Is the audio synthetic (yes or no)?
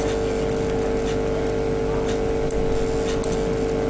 no